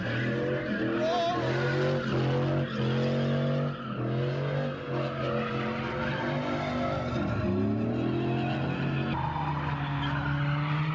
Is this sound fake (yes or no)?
no